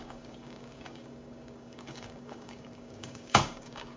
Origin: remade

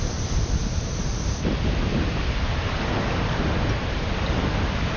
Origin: recorded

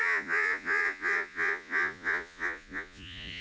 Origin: remade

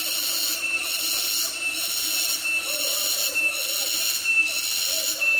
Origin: recorded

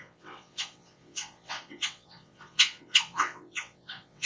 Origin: remade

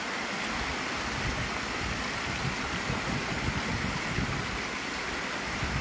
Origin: recorded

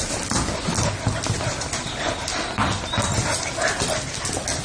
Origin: recorded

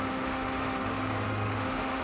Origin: remade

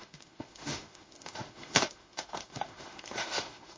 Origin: remade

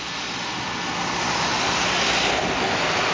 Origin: recorded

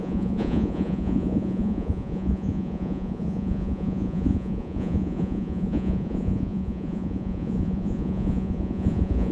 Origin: remade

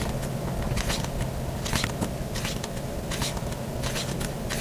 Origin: recorded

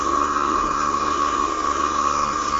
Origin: remade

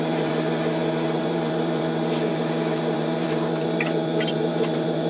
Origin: remade